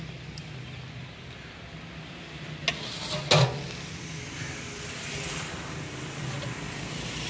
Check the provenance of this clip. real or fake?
real